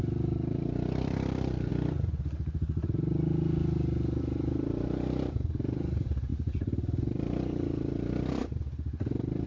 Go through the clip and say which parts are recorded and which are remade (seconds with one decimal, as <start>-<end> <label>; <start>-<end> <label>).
0.0-1.7 remade; 1.7-4.2 recorded; 4.2-9.5 remade